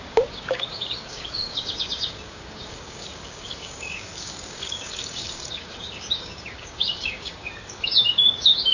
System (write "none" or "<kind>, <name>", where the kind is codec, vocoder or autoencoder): codec, DAC